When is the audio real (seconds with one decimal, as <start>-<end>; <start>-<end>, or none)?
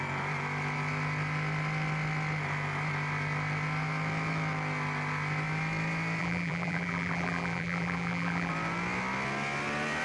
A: 0.0-6.2; 8.5-10.0